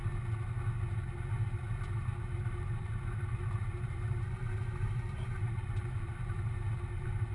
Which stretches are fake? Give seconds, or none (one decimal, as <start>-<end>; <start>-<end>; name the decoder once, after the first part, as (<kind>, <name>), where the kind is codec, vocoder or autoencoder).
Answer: 2.3-7.3 (vocoder, BigVGAN v2)